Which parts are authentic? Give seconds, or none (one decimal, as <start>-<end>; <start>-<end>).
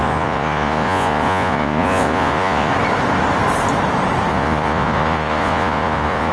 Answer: 2.7-4.3